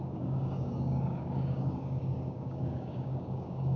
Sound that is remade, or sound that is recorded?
remade